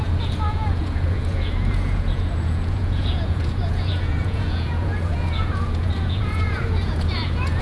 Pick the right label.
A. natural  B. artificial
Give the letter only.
B